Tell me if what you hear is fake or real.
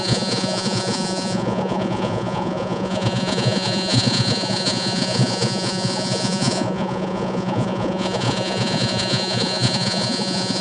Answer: fake